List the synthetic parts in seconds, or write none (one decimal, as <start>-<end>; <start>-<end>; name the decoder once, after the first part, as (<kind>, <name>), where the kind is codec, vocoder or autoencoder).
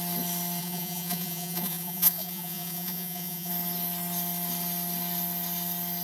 0.6-3.5 (vocoder, Vocos)